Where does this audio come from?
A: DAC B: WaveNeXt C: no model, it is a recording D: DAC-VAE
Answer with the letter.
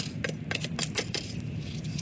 C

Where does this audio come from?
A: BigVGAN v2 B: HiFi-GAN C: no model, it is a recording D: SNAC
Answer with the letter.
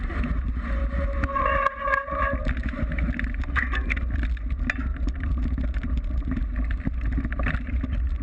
C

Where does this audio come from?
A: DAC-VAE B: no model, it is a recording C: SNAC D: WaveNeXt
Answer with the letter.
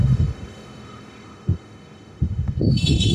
A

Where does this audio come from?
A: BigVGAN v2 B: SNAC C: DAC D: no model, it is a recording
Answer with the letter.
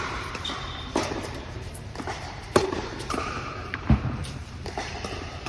A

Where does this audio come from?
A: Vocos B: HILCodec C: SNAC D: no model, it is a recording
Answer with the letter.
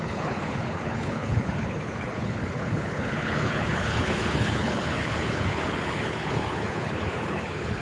B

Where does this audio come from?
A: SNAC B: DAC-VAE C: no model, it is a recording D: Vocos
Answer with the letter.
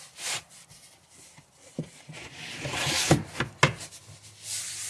C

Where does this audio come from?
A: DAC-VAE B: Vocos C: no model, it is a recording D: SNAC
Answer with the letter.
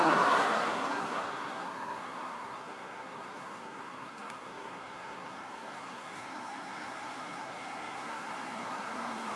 D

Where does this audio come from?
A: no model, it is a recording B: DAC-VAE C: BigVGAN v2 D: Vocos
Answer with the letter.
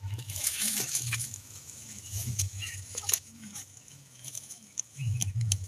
B